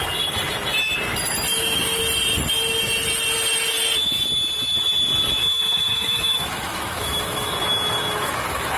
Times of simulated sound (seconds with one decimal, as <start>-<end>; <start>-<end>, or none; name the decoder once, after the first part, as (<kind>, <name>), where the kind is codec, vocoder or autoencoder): 1.5-2.0 (autoencoder, DAC-VAE); 5.4-8.8